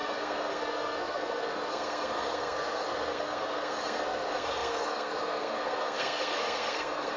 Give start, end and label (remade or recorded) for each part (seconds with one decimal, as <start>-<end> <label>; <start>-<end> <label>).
0.0-7.2 remade